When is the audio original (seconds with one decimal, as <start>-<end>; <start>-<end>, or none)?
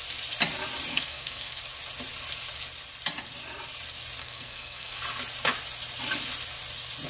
0.0-0.9; 1.6-4.2; 5.0-7.1